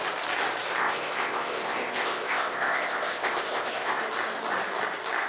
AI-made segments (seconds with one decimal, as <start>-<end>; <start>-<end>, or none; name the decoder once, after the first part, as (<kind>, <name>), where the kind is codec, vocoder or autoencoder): 0.8-4.0 (codec, ZipCodec)